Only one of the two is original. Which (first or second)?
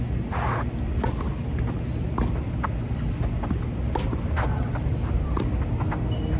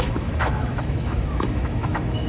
first